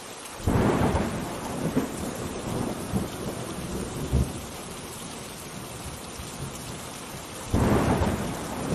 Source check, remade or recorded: remade